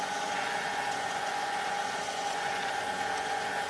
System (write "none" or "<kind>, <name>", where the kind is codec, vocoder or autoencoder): vocoder, Vocos